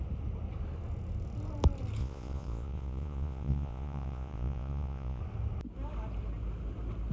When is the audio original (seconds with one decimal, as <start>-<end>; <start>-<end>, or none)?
0.0-2.0; 5.2-7.1